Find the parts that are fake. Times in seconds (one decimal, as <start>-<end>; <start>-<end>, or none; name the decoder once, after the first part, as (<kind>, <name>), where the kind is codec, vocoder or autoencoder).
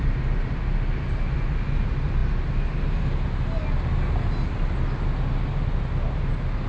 none